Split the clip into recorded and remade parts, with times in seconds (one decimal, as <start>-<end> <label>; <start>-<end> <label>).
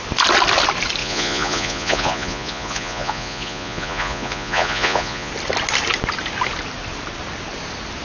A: 0.0-1.0 recorded; 1.0-5.3 remade; 5.3-8.0 recorded